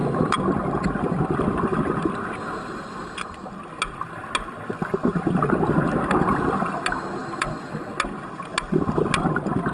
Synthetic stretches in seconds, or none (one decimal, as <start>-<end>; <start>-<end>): 0.0-3.4; 5.1-6.7; 7.2-7.8